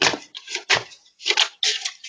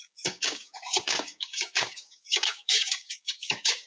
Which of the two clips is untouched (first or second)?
first